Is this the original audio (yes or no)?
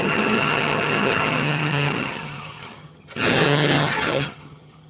no